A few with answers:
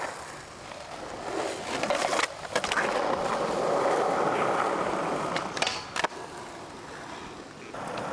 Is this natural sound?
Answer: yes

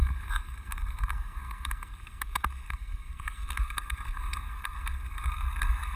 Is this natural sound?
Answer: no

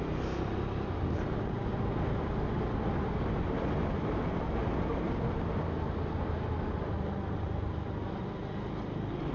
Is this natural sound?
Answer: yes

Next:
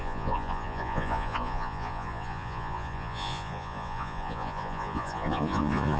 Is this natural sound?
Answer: no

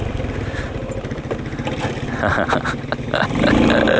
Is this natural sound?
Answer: yes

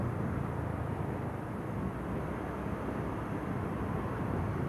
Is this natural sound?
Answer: yes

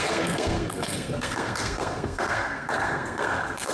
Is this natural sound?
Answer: no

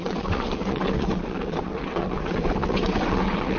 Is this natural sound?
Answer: no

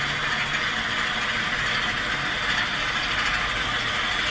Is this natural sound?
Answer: yes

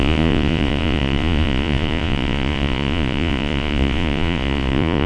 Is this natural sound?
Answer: no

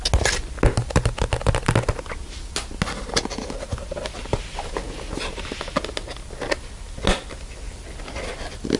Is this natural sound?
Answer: yes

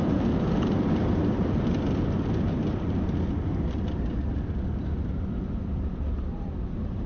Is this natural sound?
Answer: no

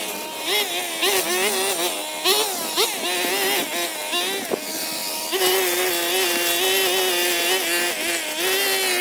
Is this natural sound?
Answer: yes